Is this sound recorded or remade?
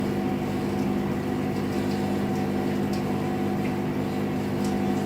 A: recorded